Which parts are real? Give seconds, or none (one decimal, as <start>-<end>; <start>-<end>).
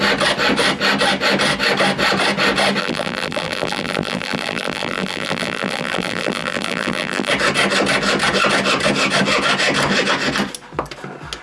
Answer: 0.0-2.8; 7.3-11.4